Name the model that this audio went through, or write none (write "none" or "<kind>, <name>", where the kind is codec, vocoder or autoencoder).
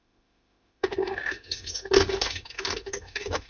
autoencoder, DAC-VAE